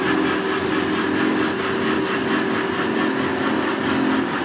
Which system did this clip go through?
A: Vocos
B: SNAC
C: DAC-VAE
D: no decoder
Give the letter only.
D